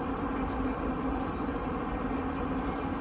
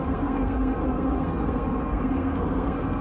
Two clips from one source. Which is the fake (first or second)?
second